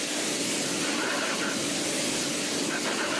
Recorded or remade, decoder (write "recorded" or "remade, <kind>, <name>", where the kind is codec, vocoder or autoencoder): recorded